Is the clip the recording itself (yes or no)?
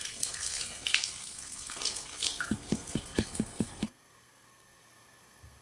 no